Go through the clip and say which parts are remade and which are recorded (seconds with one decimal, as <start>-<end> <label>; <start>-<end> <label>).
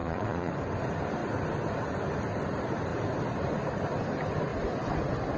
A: 0.0-0.5 remade; 0.5-5.4 recorded